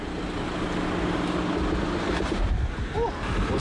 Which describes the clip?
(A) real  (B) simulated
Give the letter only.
A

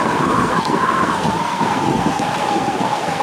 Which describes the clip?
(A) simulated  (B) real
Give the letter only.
A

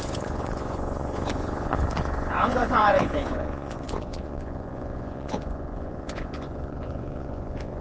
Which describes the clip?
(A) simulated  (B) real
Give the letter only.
A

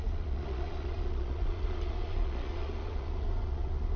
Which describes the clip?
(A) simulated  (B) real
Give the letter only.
A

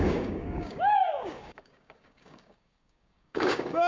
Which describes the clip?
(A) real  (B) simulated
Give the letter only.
B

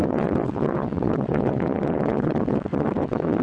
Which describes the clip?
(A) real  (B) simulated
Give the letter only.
B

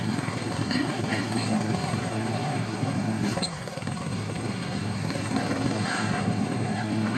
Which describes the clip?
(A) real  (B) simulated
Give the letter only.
B